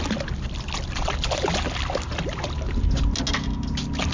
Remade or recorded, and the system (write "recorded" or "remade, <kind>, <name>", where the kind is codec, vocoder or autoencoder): recorded